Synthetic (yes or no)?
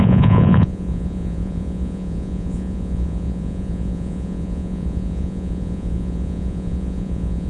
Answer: yes